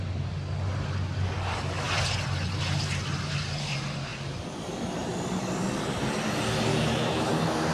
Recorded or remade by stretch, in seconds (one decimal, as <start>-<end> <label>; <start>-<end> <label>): 0.0-6.7 recorded; 6.7-7.3 remade; 7.3-7.7 recorded